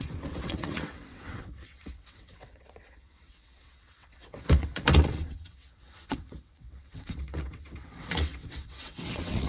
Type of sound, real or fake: fake